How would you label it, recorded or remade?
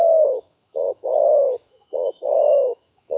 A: remade